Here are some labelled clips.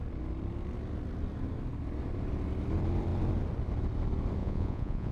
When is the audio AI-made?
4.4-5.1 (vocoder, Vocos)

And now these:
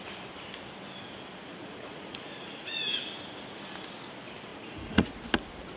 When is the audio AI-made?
1.5-3.0 (vocoder, Vocos); 4.5-5.1

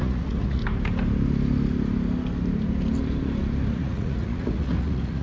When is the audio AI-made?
0.0-0.6 (vocoder, Vocos); 3.7-5.2